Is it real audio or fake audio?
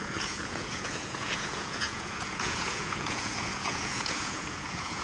fake